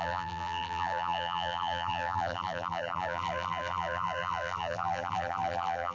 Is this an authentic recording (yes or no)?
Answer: no